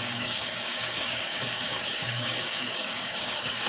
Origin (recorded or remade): remade